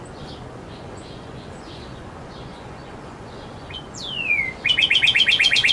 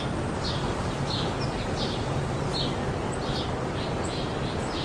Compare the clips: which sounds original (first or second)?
second